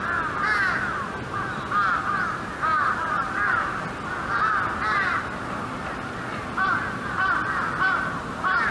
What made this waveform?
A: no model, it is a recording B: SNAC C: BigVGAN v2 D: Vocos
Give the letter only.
A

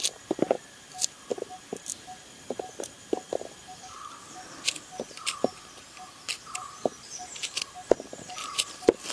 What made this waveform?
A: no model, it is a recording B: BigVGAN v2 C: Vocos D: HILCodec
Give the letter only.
A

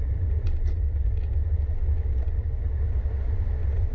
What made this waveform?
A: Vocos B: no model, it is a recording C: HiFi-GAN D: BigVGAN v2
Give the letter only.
B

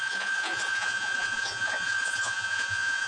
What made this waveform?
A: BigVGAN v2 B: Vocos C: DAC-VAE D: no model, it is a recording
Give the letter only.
B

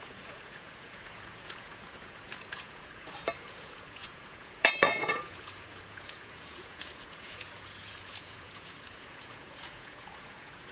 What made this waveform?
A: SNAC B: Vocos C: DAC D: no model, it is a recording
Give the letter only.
B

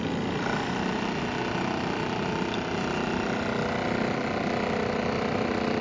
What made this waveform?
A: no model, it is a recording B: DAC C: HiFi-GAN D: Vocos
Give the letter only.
A